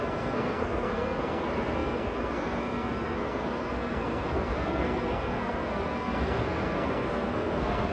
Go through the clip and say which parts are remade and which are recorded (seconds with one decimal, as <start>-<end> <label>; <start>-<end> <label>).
0.0-7.9 remade